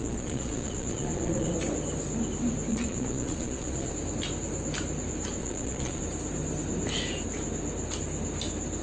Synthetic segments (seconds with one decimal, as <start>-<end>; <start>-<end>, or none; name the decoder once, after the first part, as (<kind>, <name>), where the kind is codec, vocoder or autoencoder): 0.0-1.5 (vocoder, Vocos); 2.7-3.9; 5.4-6.0